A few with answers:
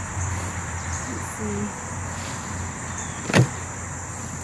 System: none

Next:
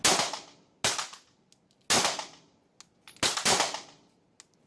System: none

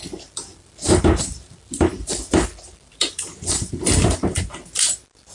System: vocoder, BigVGAN v2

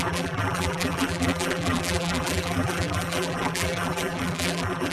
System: vocoder, BigVGAN v2